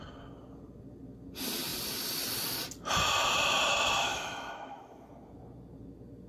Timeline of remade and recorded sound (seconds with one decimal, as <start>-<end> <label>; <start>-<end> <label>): 0.0-4.1 recorded; 4.1-5.1 remade; 5.1-6.3 recorded